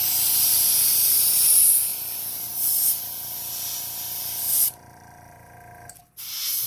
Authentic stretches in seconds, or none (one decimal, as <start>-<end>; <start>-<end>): 0.0-6.7

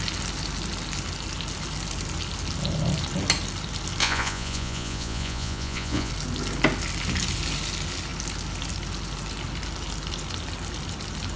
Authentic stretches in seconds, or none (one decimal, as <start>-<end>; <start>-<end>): 0.0-4.0; 6.1-11.4

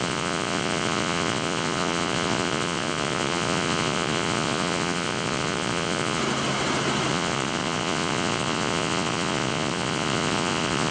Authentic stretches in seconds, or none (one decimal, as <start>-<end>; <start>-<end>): 6.2-7.1

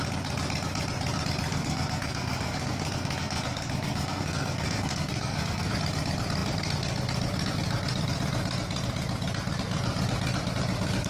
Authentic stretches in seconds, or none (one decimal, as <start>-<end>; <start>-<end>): 0.0-1.5; 5.7-11.1

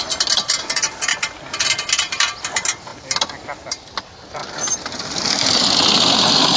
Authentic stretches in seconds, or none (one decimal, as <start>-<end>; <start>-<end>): 0.0-2.9; 4.0-6.6